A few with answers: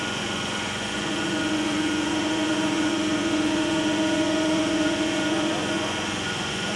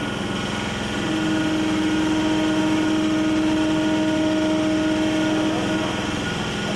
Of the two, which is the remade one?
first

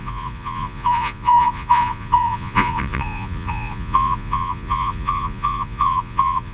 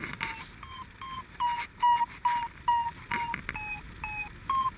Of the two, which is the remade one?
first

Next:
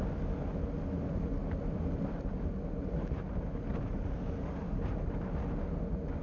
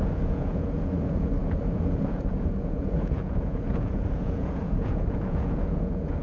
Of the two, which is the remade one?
second